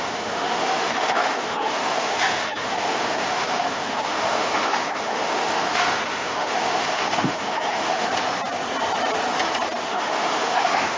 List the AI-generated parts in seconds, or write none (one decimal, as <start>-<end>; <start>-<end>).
0.0-8.1; 9.9-11.0